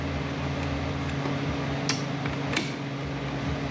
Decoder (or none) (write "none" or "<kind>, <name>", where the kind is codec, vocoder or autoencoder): none